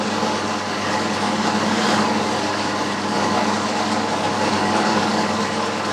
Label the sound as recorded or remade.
remade